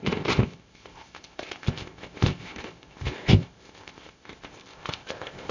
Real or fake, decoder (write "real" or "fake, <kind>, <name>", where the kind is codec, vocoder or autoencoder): fake, codec, ZipCodec